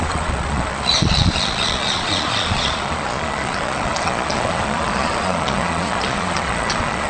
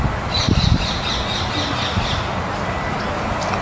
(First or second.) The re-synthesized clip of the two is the first